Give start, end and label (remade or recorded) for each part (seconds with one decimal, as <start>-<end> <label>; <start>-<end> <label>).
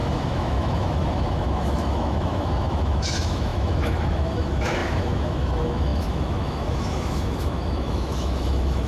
0.0-8.9 remade